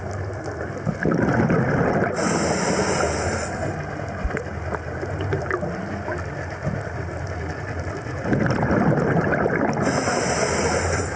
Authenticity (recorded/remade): recorded